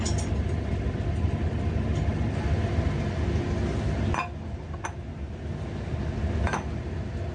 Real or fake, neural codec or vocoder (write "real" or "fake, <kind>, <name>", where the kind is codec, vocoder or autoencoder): real